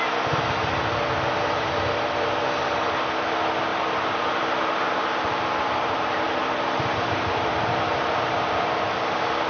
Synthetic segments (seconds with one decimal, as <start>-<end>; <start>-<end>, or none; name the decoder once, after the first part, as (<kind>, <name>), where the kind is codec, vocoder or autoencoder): 3.7-8.9 (vocoder, BigVGAN v2)